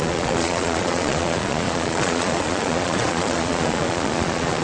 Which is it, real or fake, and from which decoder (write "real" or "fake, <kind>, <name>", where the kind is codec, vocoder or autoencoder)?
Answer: fake, vocoder, Vocos